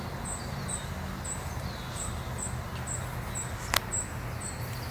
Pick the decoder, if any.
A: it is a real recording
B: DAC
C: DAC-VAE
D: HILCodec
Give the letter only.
A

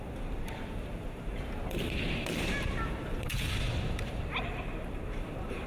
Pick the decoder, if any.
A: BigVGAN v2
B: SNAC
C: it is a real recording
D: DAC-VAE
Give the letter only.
A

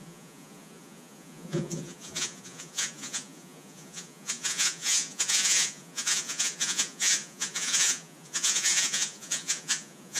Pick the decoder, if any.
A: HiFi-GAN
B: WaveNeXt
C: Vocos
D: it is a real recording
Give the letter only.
C